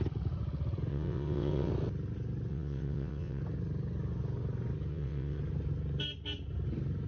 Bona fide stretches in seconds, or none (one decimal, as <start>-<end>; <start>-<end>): 0.0-0.9; 1.7-2.5; 3.4-4.9; 5.4-7.1